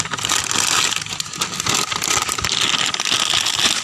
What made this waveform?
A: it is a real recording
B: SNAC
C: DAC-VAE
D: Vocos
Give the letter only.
A